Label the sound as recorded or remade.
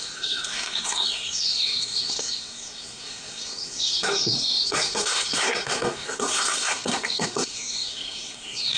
remade